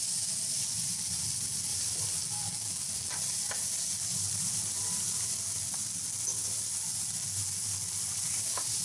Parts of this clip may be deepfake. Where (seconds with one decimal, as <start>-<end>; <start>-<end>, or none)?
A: 1.7-2.2; 4.1-5.4